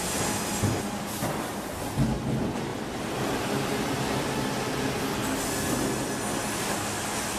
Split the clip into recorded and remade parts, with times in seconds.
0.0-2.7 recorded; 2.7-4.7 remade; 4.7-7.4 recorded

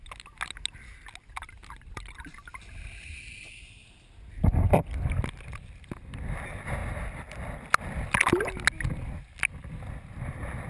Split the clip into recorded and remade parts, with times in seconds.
0.0-10.7 recorded